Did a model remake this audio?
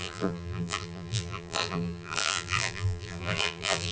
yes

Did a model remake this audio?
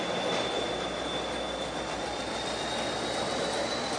no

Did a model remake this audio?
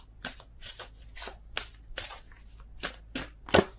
no